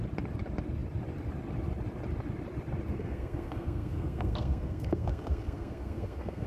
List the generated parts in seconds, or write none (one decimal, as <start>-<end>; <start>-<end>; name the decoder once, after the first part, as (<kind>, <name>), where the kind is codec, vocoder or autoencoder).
2.9-6.5 (codec, SNAC)